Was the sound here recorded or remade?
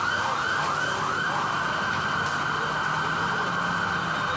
recorded